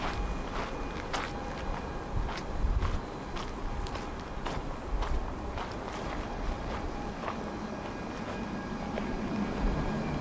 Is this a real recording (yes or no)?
yes